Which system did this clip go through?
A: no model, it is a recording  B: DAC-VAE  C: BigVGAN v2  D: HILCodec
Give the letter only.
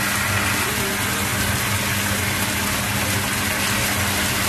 A